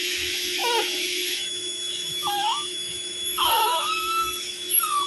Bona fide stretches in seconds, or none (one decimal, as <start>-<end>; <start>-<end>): none